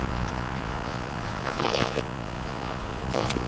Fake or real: fake